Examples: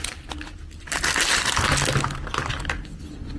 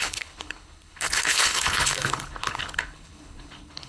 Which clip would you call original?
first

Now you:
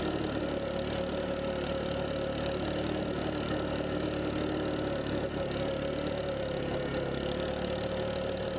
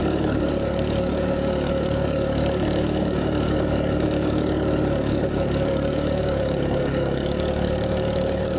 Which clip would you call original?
first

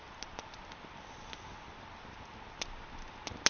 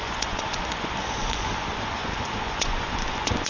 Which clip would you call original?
first